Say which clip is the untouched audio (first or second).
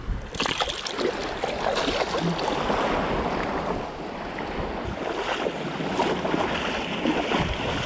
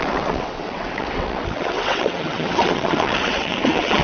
first